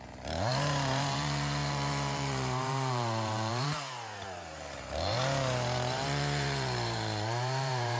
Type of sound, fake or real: fake